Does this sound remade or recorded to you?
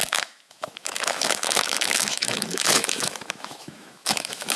remade